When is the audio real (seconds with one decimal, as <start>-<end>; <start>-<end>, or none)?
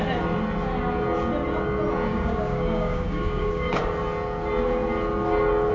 0.0-2.1; 3.8-5.7